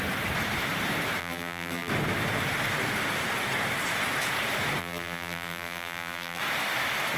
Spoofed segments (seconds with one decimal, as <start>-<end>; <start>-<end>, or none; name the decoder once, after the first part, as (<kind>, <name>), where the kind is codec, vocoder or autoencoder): 1.2-1.9 (vocoder, BigVGAN v2); 4.8-6.4